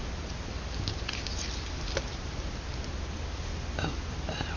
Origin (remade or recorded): recorded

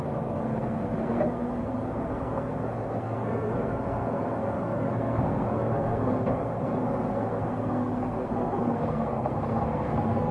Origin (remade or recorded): remade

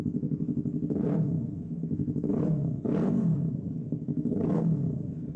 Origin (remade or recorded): remade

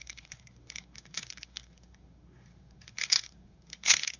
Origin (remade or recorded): remade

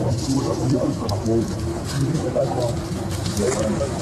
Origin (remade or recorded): recorded